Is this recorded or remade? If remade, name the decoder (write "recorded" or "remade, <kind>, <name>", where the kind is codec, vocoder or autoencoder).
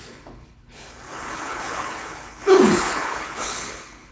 remade, codec, HILCodec